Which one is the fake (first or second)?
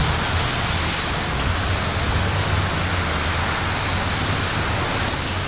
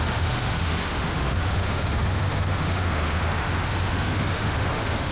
second